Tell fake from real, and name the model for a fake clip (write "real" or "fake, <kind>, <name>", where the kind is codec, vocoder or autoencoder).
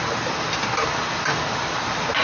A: real